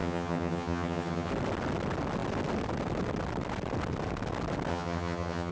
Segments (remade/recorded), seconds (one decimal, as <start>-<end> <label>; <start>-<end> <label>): 0.0-1.3 remade; 1.3-4.7 recorded; 4.7-5.5 remade